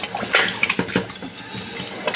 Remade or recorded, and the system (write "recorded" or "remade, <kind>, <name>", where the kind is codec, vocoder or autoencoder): recorded